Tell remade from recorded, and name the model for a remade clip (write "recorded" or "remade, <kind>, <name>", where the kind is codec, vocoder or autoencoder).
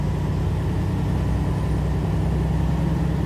recorded